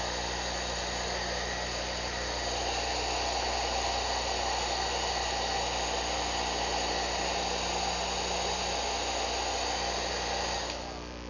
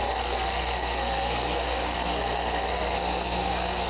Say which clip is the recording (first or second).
first